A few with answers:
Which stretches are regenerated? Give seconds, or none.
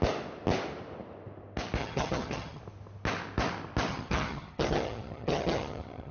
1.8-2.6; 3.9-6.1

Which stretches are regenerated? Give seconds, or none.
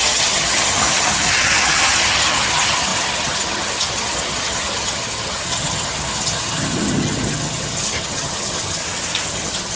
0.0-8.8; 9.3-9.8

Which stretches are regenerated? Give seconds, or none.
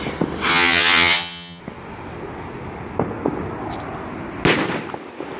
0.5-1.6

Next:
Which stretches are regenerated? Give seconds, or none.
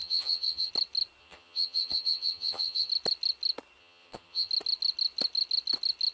0.0-0.7; 1.2-2.9; 3.8-4.5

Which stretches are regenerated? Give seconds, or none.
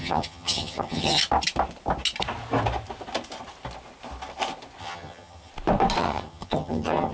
0.0-1.2; 4.8-5.5; 6.0-7.1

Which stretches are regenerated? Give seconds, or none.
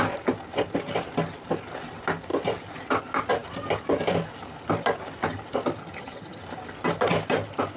5.8-6.4